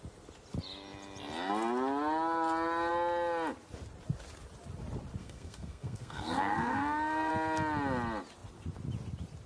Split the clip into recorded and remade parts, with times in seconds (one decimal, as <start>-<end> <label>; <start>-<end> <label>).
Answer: 0.0-5.2 recorded; 5.2-7.3 remade; 7.3-9.5 recorded